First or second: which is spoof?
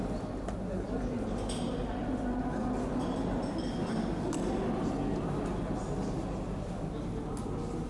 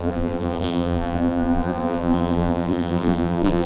second